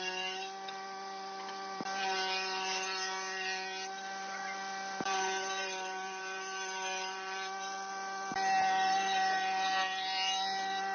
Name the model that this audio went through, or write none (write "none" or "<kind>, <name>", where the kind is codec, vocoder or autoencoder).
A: vocoder, BigVGAN v2